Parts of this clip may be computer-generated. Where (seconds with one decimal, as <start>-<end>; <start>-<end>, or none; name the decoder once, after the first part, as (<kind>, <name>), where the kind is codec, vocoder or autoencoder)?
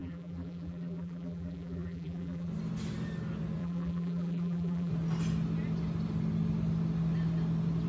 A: 0.0-2.5 (vocoder, BigVGAN v2); 3.6-4.9